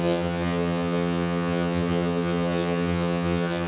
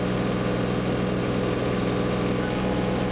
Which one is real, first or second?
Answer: second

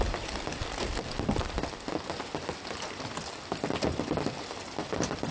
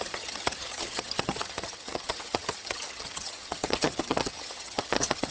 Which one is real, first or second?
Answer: first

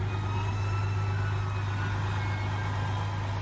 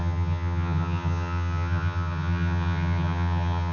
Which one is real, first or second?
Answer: first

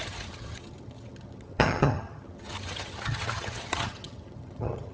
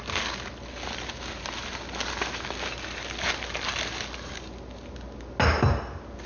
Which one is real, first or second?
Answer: second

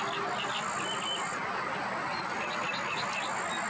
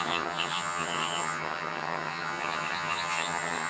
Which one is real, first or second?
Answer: first